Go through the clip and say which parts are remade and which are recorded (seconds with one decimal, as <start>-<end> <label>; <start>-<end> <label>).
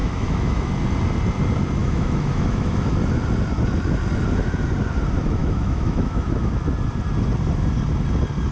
0.0-0.7 remade; 0.7-1.8 recorded; 1.8-2.9 remade; 2.9-5.4 recorded; 5.4-6.7 remade; 6.7-8.5 recorded